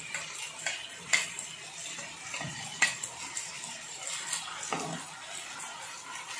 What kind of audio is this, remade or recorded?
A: recorded